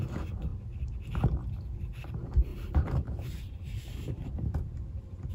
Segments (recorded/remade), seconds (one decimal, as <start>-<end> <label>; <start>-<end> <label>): 0.0-2.5 recorded; 2.5-5.3 remade